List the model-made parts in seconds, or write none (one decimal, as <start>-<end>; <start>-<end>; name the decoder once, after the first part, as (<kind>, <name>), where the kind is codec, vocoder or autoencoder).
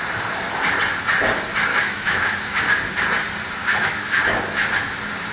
1.7-2.6 (autoencoder, DAC-VAE); 3.6-4.2